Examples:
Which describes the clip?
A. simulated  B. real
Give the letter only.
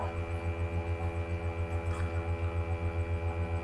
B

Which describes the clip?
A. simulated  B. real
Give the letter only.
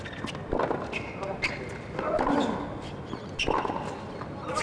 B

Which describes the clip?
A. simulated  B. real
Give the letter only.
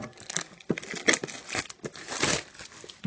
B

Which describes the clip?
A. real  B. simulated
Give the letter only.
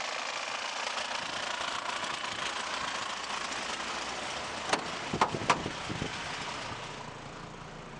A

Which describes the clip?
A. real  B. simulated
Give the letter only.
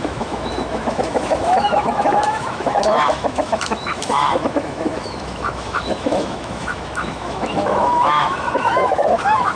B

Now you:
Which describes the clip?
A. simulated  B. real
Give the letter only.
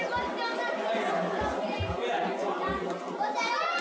B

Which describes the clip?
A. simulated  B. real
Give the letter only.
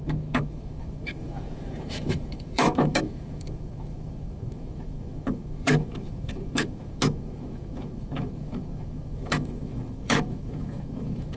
A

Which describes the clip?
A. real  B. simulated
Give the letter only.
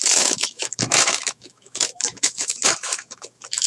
B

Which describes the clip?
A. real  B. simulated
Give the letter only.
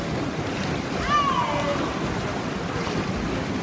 A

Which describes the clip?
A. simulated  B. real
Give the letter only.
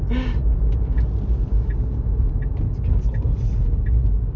B